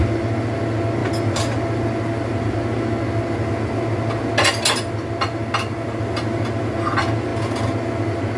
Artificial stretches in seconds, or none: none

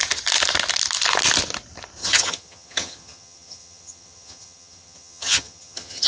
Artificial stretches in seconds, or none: 2.0-6.1 (vocoder, HiFi-GAN)

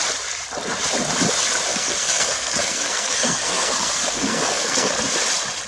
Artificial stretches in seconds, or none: 1.7-4.9 (codec, SNAC)

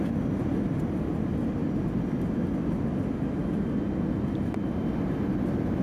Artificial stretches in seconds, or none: none

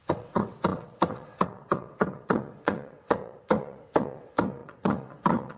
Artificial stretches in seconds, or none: 0.0-5.6 (vocoder, WaveNeXt)

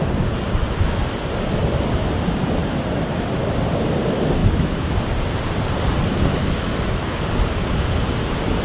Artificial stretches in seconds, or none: 4.4-4.9 (autoencoder, DAC-VAE); 6.3-7.1